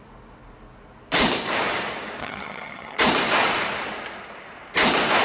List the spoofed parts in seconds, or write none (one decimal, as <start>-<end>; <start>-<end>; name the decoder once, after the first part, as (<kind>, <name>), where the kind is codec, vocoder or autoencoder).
2.2-3.0 (vocoder, HiFi-GAN)